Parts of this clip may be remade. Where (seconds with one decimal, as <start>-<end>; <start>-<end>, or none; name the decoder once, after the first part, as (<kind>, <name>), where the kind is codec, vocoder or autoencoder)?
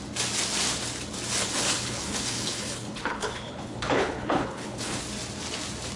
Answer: 1.4-5.0 (codec, HILCodec)